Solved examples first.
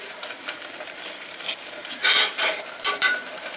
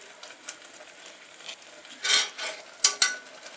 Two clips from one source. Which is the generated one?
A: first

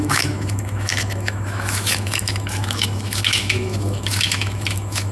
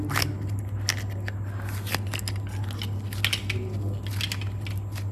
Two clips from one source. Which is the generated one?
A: first